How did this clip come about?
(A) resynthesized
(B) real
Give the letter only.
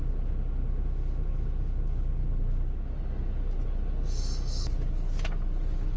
B